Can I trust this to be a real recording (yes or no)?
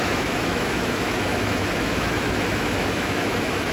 no